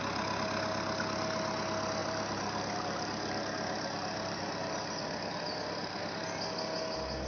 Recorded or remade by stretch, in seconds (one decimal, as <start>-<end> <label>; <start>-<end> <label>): 0.0-2.0 recorded; 2.0-6.0 remade; 6.0-7.3 recorded